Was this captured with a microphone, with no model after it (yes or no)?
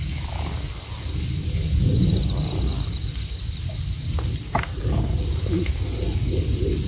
yes